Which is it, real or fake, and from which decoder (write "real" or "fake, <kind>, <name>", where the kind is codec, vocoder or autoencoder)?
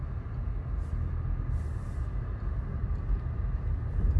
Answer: real